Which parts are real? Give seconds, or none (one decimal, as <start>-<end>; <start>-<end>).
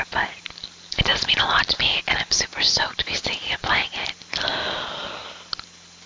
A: 0.0-6.1